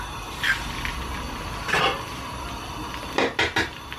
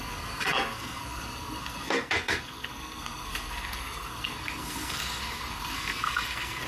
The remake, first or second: second